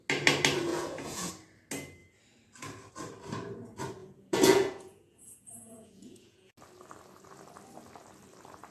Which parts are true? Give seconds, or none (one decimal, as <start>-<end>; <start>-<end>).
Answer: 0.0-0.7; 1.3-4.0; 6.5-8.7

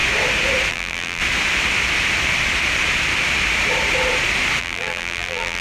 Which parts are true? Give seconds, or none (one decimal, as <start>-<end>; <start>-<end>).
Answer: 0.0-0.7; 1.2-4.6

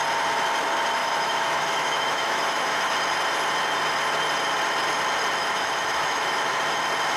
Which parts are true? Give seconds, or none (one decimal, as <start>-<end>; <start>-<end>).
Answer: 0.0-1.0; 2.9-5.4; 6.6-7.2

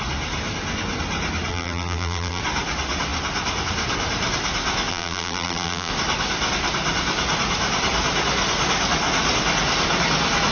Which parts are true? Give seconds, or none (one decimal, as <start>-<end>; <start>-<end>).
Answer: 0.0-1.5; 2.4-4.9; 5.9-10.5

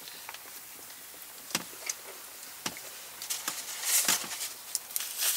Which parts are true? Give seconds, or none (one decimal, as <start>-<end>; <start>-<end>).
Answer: 0.0-2.3; 2.9-5.4

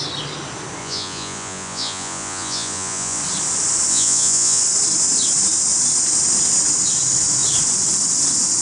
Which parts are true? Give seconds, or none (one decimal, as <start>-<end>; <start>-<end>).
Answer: 0.0-0.8; 3.2-3.9; 4.6-8.6